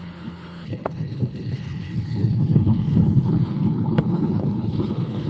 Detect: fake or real fake